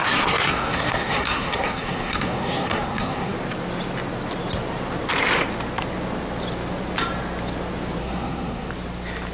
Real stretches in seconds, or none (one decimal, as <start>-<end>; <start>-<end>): 3.3-8.0; 8.7-9.3